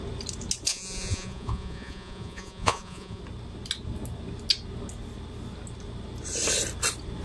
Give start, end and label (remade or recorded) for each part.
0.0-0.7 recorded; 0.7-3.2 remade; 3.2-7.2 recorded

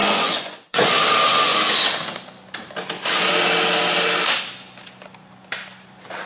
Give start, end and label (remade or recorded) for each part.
0.0-1.0 remade; 1.0-6.3 recorded

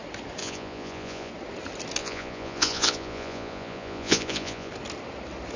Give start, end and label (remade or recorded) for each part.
0.0-0.4 recorded; 0.4-1.3 remade; 1.3-2.0 recorded; 2.0-4.7 remade; 4.7-5.6 recorded

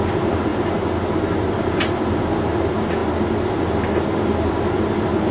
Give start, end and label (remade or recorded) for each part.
0.0-5.3 recorded

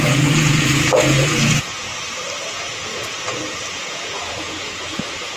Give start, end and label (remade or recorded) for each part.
0.0-1.9 remade; 1.9-2.5 recorded; 2.5-5.4 remade

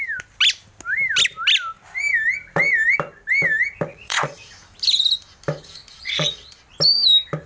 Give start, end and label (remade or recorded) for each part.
0.0-3.9 recorded; 3.9-4.5 remade; 4.5-5.8 recorded; 5.8-6.7 remade; 6.7-7.5 recorded